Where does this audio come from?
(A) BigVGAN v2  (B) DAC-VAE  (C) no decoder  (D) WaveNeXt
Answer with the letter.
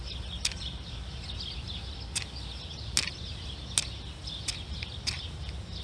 C